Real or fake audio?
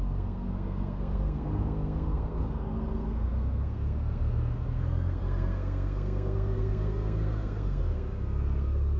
fake